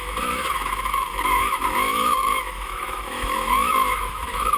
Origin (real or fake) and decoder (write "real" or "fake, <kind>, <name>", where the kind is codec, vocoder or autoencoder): fake, autoencoder, DAC-VAE